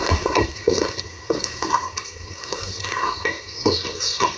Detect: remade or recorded remade